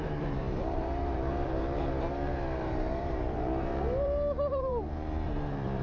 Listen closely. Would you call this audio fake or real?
fake